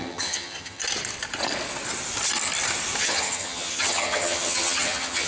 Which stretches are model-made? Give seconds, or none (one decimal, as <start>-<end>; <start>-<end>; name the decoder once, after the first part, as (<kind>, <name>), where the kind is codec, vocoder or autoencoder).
0.0-0.8 (vocoder, HiFi-GAN); 3.0-5.3